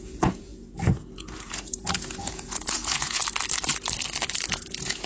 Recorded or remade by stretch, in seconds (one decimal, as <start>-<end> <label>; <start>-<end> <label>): 0.0-3.2 remade; 3.2-4.5 recorded; 4.5-5.1 remade